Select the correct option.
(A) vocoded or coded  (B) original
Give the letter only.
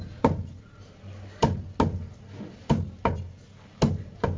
B